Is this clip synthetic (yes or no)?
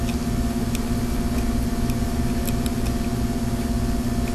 no